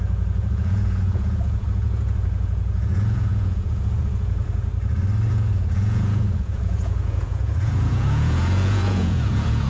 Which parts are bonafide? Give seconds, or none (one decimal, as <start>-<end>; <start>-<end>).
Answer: 4.7-5.3